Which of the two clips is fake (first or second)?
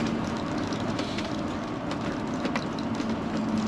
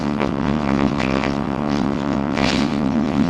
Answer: second